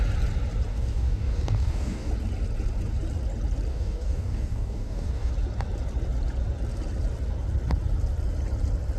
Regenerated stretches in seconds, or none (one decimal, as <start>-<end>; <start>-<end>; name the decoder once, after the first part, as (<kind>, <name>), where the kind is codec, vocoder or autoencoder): 0.7-2.1 (codec, DAC); 3.7-5.3